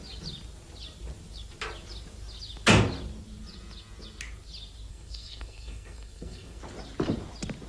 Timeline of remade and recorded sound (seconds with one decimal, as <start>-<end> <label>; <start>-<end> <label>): 0.0-4.9 recorded; 4.9-6.6 remade; 6.6-7.7 recorded